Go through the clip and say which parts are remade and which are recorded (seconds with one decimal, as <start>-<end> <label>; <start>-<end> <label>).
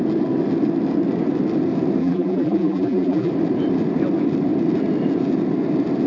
0.0-2.0 recorded; 2.0-3.3 remade; 3.3-6.1 recorded